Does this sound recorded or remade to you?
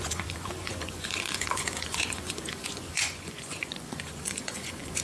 remade